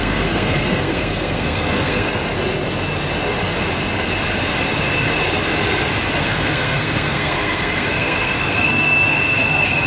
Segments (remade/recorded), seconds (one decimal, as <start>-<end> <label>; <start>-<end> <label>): 0.0-2.2 remade; 2.2-6.2 recorded; 6.2-9.9 remade